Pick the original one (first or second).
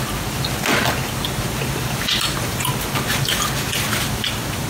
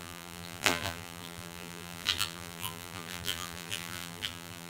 first